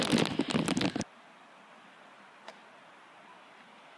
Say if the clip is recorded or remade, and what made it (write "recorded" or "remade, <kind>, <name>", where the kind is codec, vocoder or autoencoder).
recorded